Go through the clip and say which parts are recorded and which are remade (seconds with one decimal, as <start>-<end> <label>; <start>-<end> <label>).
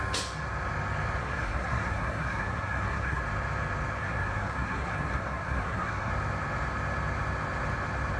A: 0.0-1.2 recorded; 1.2-3.2 remade; 3.2-4.0 recorded; 4.0-6.1 remade; 6.1-8.2 recorded